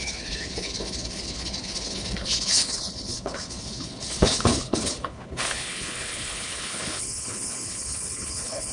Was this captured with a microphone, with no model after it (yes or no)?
no